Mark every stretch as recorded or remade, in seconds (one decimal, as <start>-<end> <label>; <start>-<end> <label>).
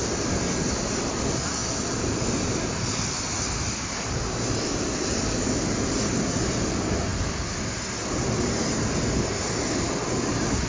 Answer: 0.0-10.7 recorded